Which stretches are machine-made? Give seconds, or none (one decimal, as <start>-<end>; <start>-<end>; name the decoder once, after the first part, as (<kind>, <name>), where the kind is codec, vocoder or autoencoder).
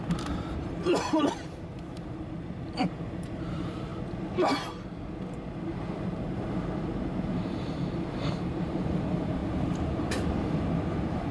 0.0-3.9 (vocoder, BigVGAN v2); 6.0-9.4